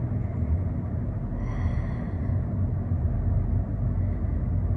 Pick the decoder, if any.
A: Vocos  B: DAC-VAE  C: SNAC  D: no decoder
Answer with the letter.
D